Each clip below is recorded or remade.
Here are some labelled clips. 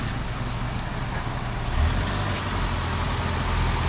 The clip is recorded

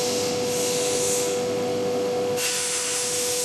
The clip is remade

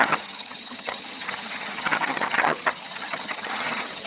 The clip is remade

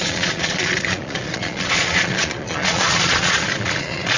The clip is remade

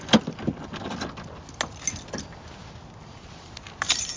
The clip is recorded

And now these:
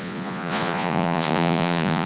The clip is remade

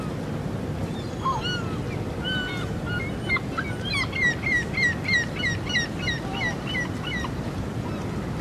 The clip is recorded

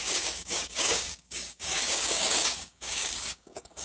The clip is remade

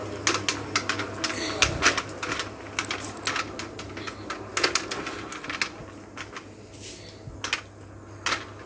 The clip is recorded